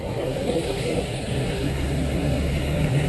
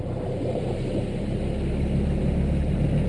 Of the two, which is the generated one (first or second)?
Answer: first